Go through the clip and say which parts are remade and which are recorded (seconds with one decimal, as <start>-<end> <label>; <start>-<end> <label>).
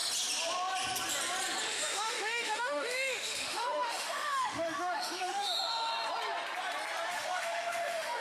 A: 0.0-1.6 recorded; 1.6-5.9 remade; 5.9-7.1 recorded; 7.1-8.2 remade